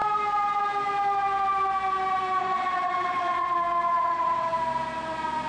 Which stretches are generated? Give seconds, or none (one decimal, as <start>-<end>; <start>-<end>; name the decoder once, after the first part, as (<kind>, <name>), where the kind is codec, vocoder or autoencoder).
2.4-4.5 (vocoder, WaveNeXt)